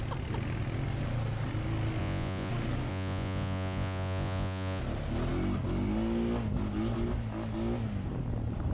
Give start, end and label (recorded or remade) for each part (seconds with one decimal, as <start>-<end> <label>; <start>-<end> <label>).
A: 0.0-2.0 recorded; 2.0-2.5 remade; 2.5-2.9 recorded; 2.9-4.8 remade; 4.8-8.7 recorded